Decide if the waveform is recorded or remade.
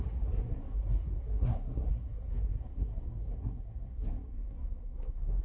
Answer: remade